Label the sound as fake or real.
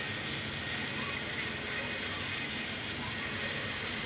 real